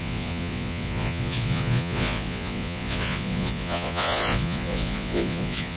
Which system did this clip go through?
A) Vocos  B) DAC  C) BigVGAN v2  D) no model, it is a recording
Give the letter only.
A